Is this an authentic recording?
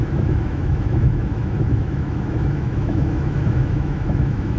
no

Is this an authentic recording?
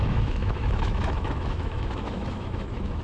no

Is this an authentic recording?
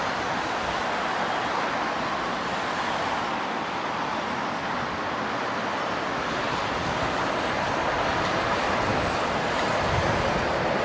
yes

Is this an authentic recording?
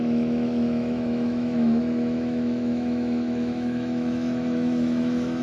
no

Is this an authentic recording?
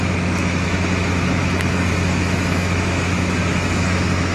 no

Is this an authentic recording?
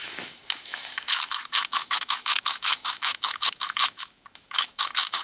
no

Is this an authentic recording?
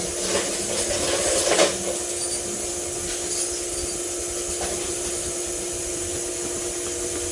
yes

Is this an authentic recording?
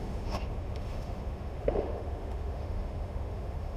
no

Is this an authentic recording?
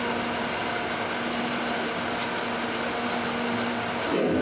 yes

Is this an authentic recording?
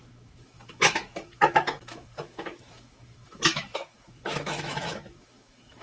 no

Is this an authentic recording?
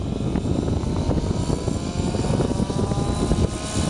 yes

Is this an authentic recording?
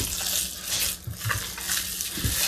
yes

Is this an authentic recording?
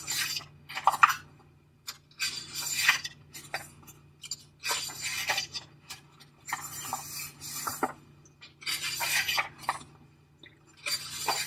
yes